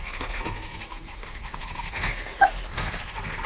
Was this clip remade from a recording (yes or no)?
yes